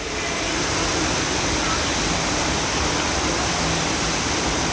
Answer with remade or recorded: recorded